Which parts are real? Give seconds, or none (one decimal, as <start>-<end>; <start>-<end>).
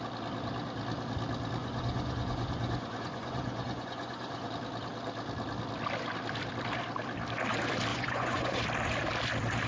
0.0-1.6; 4.5-7.9; 8.6-9.7